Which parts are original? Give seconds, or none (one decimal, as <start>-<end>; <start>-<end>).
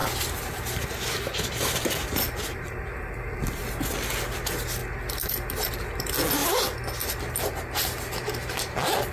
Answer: 3.9-9.1